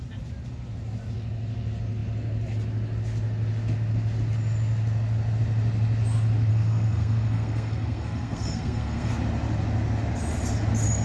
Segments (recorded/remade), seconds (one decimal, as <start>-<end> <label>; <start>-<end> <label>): 0.0-6.5 recorded; 6.5-9.1 remade; 9.1-11.0 recorded